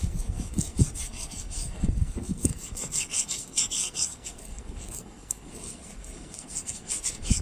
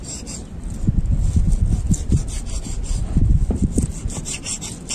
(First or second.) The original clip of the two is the second